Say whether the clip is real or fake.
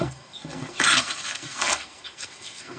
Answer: fake